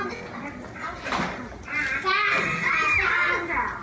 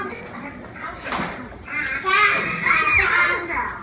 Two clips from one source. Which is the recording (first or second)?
first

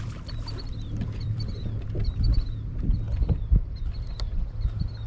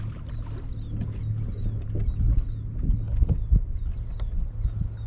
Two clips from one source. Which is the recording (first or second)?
second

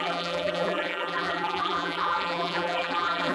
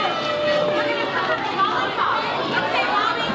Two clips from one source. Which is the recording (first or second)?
second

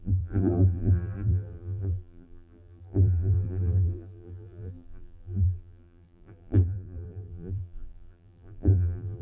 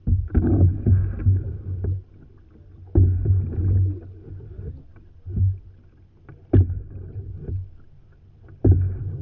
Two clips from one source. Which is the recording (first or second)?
second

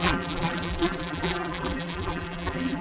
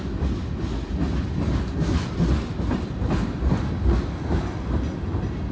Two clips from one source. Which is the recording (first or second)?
second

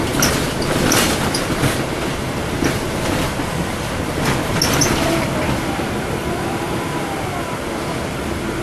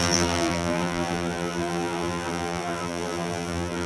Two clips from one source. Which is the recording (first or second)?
first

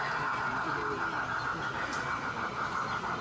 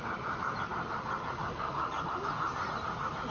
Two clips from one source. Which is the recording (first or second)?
first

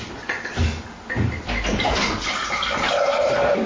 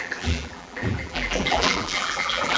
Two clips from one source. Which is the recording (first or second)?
first